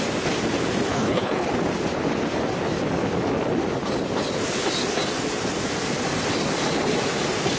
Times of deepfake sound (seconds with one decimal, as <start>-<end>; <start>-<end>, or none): 0.9-1.5